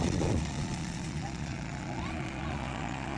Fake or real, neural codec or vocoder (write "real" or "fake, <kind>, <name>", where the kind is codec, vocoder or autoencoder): fake, vocoder, Vocos